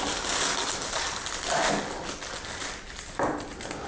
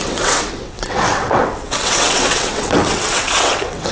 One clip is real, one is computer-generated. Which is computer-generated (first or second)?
second